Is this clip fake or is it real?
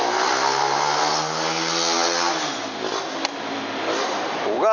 real